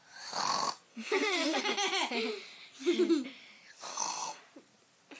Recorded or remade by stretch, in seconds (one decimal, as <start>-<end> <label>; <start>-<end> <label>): 0.0-0.9 recorded; 0.9-1.6 remade; 1.6-3.9 recorded; 3.9-4.4 remade; 4.4-5.2 recorded

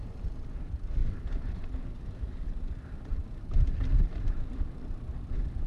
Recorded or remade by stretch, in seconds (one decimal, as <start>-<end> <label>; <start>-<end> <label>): 0.0-5.7 recorded

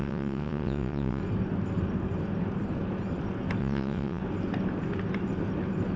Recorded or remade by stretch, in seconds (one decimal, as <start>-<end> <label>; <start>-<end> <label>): 0.0-1.2 remade; 1.2-3.6 recorded; 3.6-4.2 remade; 4.2-6.0 recorded

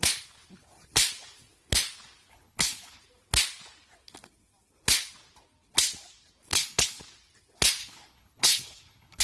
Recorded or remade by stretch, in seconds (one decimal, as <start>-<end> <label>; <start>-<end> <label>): 0.0-2.3 recorded; 2.3-3.0 remade; 3.0-6.5 recorded; 6.5-7.0 remade; 7.0-7.8 recorded; 7.8-9.2 remade

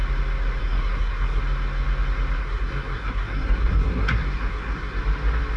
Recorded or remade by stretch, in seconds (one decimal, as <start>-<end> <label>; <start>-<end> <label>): 0.0-0.6 recorded; 0.6-1.4 remade; 1.4-2.4 recorded; 2.4-5.0 remade; 5.0-5.6 recorded